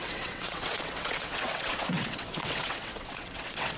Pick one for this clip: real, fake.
fake